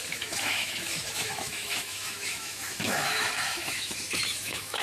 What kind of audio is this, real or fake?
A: fake